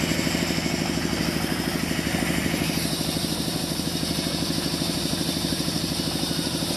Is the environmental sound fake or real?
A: fake